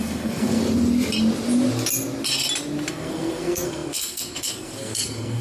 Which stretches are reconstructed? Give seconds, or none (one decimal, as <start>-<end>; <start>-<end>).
0.0-0.6; 2.9-5.4